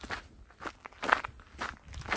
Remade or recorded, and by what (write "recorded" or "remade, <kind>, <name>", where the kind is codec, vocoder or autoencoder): recorded